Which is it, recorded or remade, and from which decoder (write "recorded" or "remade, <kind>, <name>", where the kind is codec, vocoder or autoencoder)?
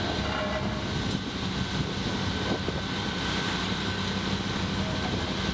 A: recorded